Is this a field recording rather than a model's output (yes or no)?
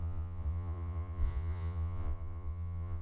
no